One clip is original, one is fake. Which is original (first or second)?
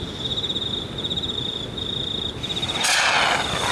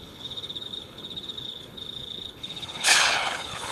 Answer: first